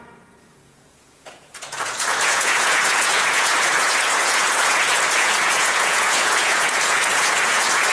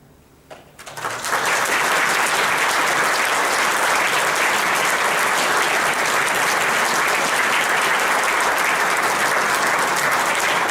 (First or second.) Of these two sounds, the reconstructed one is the first